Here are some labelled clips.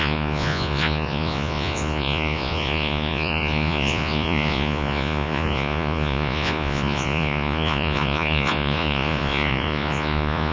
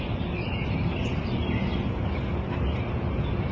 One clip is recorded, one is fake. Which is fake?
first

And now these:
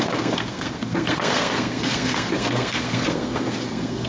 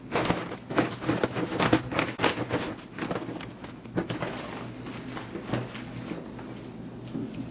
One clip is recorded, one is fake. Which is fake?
first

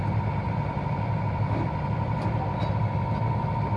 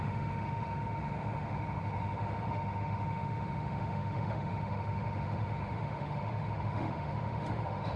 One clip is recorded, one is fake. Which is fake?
second